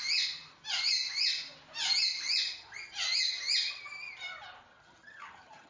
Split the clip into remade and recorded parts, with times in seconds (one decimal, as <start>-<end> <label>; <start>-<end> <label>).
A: 0.0-4.7 recorded; 4.7-5.7 remade